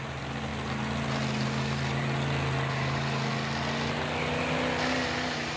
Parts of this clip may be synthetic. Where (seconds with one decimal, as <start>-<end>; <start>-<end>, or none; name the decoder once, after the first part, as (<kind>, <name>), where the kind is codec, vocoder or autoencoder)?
none